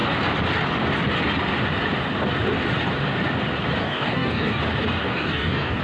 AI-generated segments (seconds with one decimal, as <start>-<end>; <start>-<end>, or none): 3.8-4.6; 5.0-5.8